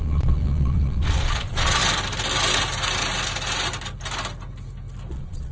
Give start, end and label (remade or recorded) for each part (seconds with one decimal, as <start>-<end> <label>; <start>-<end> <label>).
0.0-1.8 remade; 1.8-5.1 recorded; 5.1-5.5 remade